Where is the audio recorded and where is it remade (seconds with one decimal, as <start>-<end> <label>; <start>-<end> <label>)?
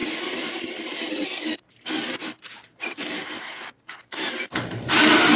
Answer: 0.0-5.4 remade